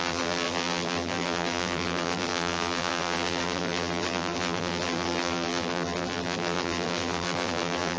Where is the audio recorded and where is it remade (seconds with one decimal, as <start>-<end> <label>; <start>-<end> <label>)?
0.0-8.0 remade